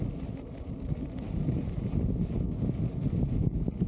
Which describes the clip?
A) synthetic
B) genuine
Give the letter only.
B